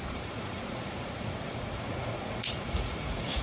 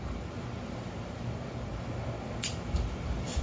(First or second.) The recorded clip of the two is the second